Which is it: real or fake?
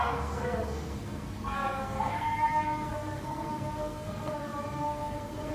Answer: fake